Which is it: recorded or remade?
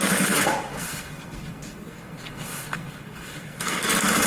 remade